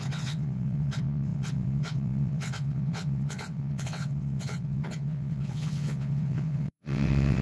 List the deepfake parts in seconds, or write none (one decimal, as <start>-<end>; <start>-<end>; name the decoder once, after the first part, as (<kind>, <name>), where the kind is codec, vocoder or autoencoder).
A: 0.0-7.4 (vocoder, WaveNeXt)